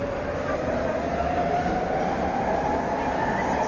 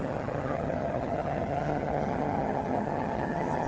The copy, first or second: second